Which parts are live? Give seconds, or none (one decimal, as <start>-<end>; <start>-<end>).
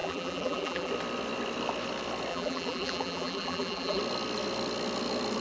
0.9-2.3; 4.0-5.4